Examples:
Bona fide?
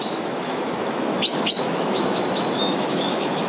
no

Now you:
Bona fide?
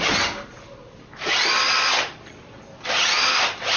yes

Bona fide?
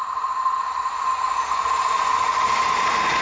yes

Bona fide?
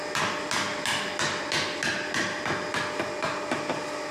yes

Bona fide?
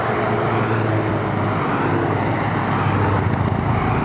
yes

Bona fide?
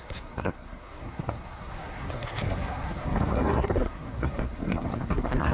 no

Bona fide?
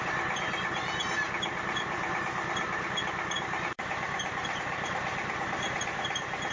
no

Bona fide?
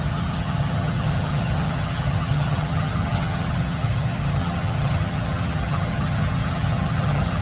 no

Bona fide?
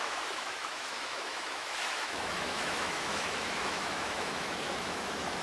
no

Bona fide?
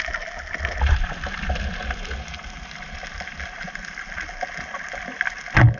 yes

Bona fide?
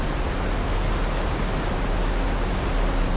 yes